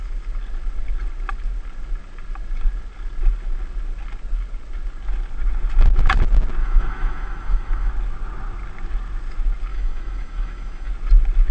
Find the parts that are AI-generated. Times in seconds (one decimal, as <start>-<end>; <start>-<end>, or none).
6.6-7.9; 9.7-10.9